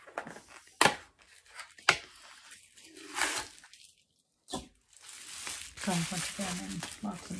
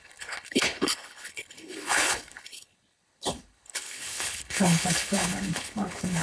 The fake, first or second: second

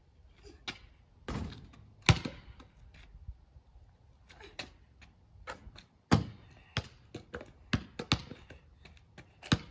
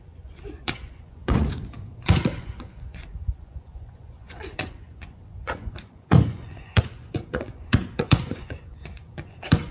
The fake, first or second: second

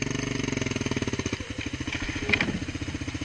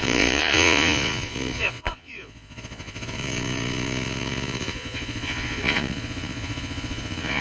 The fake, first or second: second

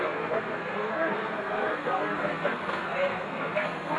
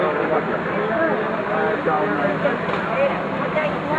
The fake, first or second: first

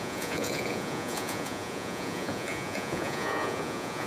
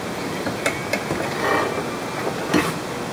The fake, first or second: first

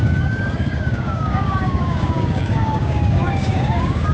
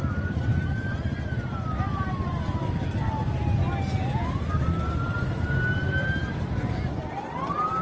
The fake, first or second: first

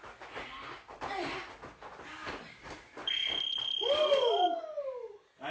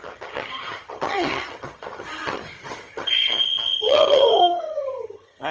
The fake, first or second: second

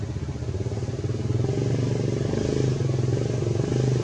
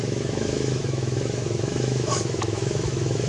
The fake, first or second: second